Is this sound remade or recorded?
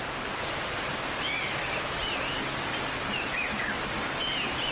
recorded